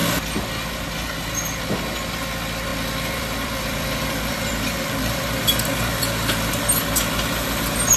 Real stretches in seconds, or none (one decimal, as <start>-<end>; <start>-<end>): 0.0-2.7; 6.5-8.0